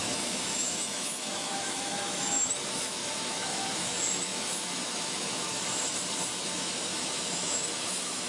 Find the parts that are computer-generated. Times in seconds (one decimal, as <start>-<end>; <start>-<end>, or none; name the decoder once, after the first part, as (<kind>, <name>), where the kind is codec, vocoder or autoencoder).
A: 0.0-5.6 (autoencoder, DAC-VAE); 6.4-8.3